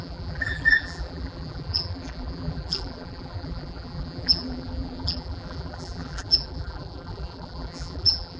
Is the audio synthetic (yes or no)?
yes